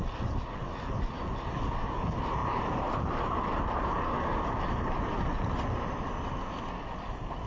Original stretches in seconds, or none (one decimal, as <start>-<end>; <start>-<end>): 0.0-7.5